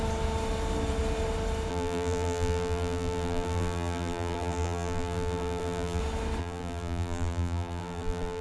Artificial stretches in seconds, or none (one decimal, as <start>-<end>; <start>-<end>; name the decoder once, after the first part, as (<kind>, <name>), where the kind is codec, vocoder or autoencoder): 1.7-6.0 (vocoder, BigVGAN v2); 6.4-8.4

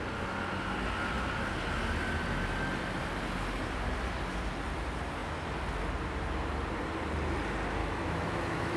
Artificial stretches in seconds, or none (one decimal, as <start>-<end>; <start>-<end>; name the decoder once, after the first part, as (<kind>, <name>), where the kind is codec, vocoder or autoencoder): 7.8-8.8 (autoencoder, DAC-VAE)

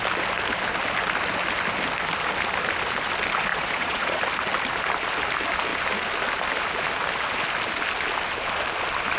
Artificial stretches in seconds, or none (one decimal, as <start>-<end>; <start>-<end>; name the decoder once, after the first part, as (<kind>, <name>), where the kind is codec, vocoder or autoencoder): 3.5-4.2 (vocoder, Vocos)

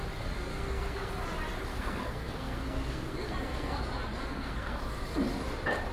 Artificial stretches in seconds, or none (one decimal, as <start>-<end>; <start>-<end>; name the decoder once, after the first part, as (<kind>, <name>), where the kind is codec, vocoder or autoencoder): 0.5-1.1 (codec, SNAC); 1.7-3.8; 4.2-4.8